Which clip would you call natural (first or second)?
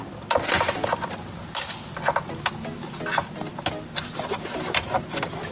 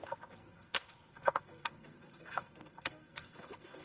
first